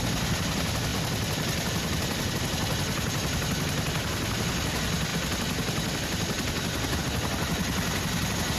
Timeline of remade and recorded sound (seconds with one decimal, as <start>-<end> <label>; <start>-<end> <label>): 0.0-0.9 recorded; 0.9-2.3 remade; 2.3-8.6 recorded